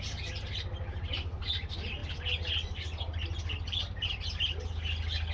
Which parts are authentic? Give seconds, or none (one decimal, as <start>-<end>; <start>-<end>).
0.0-5.3